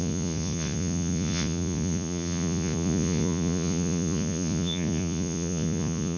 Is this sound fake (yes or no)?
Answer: yes